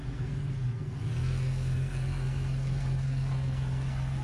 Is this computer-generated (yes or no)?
yes